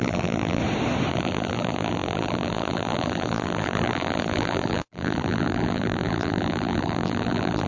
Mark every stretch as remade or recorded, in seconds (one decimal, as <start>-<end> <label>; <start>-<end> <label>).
0.0-0.6 remade; 0.6-1.1 recorded; 1.1-7.7 remade